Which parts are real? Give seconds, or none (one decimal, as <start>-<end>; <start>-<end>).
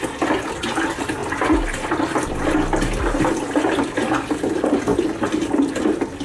0.0-4.9; 5.7-6.2